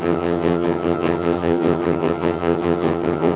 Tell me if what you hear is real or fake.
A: fake